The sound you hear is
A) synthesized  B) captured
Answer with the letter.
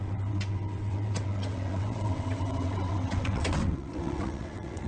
A